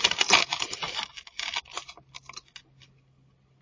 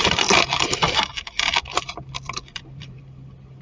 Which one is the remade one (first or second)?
second